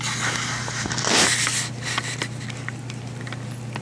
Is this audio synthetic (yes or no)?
no